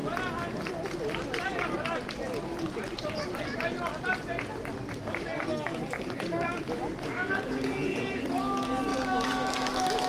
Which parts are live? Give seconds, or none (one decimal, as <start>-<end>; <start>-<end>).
0.0-4.9

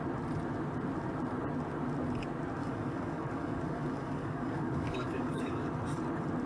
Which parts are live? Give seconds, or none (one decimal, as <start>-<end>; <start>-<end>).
0.0-2.6; 5.7-6.5

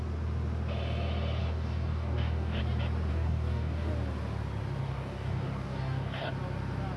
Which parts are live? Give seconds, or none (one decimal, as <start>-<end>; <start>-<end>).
0.0-1.4; 2.6-3.1; 3.9-4.8; 6.3-7.0

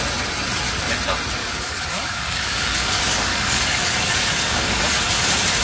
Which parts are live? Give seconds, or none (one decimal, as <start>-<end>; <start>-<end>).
0.0-1.4; 4.8-5.6

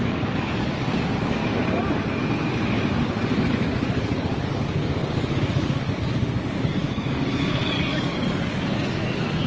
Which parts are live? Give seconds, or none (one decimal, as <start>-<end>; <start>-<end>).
1.4-3.0

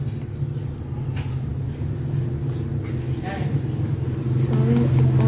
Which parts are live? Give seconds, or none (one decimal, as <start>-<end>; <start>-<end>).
0.0-5.3

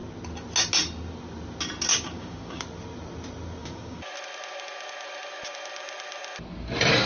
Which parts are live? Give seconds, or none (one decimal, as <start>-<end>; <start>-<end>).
0.0-1.9; 2.6-3.6; 4.1-7.1